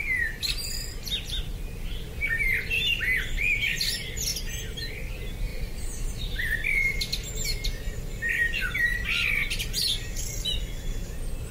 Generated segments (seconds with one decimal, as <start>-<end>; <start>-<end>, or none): 5.5-7.3

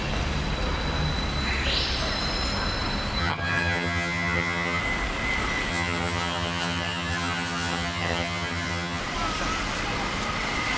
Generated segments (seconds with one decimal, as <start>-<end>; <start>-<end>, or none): 3.2-4.8; 5.7-9.0

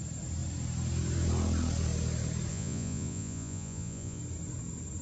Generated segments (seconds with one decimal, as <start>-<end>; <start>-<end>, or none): 2.5-4.2

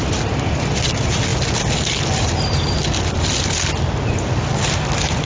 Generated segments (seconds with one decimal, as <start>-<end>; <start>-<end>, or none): 0.0-5.2

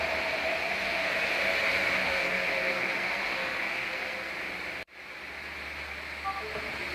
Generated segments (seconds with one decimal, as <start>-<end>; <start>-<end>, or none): 0.8-1.3; 2.0-4.3

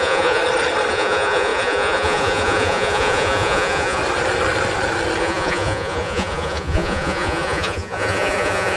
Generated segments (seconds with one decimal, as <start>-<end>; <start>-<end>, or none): 0.0-0.4; 0.9-4.0; 5.2-8.8